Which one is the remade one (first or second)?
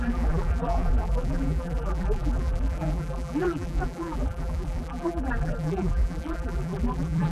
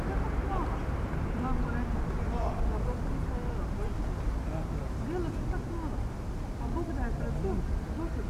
first